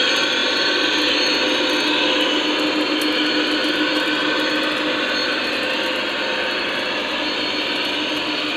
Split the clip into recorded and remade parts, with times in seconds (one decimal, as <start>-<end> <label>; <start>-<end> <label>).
0.0-5.2 recorded; 5.2-6.2 remade; 6.2-8.6 recorded